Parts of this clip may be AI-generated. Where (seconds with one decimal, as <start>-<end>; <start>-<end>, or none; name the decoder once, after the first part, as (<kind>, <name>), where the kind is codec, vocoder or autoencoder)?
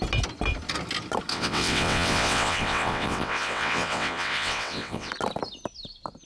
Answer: 1.3-5.1 (vocoder, WaveNeXt)